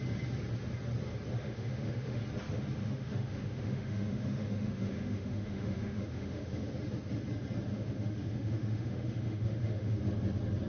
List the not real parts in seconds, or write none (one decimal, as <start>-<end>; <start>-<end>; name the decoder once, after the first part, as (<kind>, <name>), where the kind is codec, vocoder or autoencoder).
1.4-2.2 (autoencoder, DAC-VAE); 2.8-6.7; 7.7-10.0